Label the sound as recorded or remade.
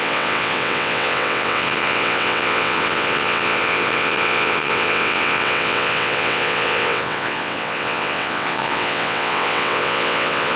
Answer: remade